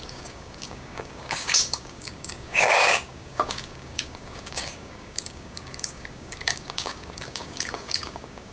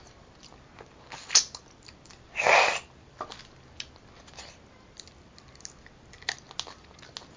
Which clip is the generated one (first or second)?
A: first